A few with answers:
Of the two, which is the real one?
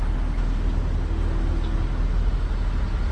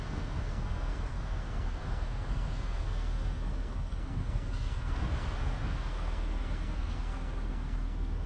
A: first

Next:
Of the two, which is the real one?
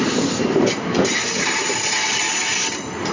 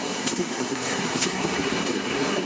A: first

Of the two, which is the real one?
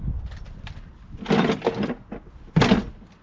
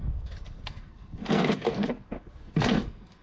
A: first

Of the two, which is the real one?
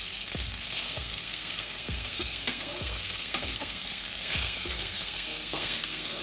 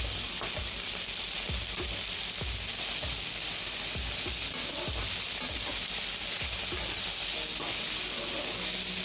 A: second